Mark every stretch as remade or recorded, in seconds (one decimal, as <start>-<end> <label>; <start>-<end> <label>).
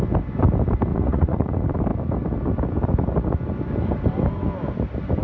0.0-0.9 recorded; 0.9-1.5 remade; 1.5-5.2 recorded